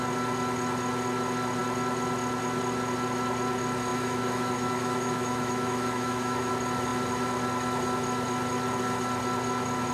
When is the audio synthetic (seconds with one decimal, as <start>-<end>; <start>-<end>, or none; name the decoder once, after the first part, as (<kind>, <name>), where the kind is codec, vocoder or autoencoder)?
3.9-6.5 (autoencoder, DAC-VAE)